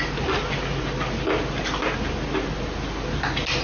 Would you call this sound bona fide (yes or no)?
yes